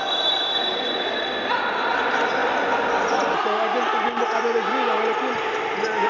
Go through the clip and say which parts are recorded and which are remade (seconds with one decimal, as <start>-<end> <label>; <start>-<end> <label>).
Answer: 0.0-6.1 recorded